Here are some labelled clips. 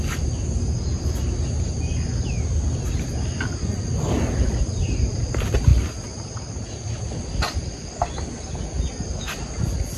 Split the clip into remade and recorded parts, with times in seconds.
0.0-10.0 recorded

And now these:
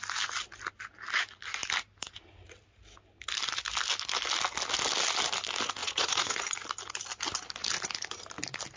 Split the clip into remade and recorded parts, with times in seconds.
0.0-5.8 recorded; 5.8-6.3 remade; 6.3-8.8 recorded

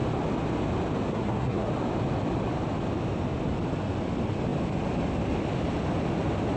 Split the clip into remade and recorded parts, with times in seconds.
0.0-1.1 recorded; 1.1-1.7 remade; 1.7-6.6 recorded